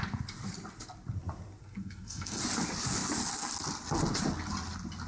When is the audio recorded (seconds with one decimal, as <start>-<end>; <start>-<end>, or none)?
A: 0.0-1.6; 2.4-5.1